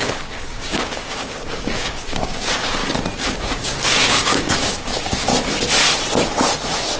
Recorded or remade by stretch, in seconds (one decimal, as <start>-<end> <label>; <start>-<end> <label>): 0.0-2.8 remade; 2.8-3.3 recorded; 3.3-5.3 remade; 5.3-7.0 recorded